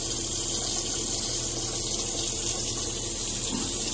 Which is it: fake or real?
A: real